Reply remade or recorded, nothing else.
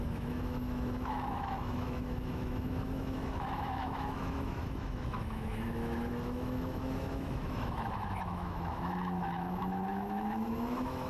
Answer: remade